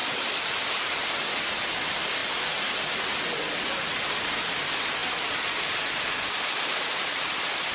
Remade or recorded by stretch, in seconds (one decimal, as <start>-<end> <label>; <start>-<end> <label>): 0.0-7.7 recorded